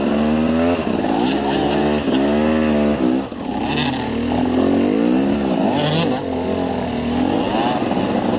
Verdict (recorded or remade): recorded